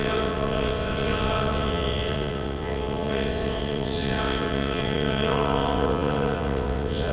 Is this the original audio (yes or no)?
no